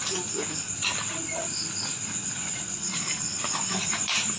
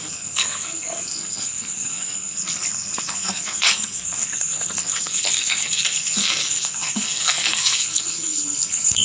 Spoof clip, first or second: second